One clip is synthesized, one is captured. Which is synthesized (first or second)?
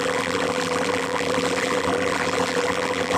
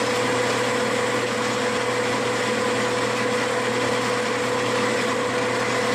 first